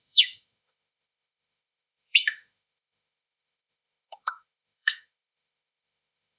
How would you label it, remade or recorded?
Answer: remade